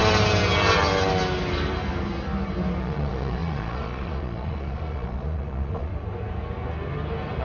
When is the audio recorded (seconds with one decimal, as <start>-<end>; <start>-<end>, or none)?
0.0-2.8; 5.9-7.4